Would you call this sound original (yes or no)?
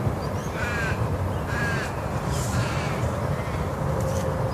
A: yes